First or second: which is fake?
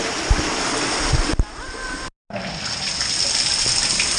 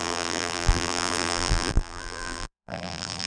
second